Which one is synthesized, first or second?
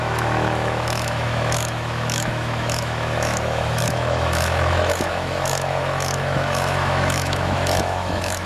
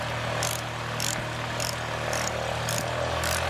first